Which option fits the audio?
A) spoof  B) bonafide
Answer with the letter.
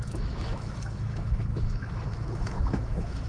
A